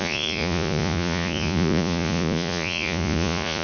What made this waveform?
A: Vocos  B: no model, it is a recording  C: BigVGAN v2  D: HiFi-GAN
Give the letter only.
A